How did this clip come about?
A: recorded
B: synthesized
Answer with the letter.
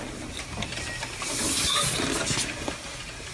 A